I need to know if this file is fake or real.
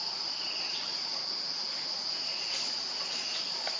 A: real